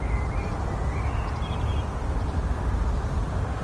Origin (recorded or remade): recorded